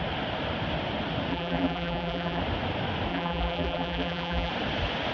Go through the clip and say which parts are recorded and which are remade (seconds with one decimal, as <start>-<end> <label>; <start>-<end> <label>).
0.0-1.3 recorded; 1.3-2.4 remade; 2.4-3.1 recorded; 3.1-4.5 remade; 4.5-5.1 recorded